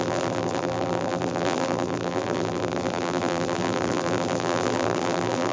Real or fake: fake